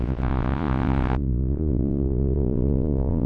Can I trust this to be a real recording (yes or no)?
no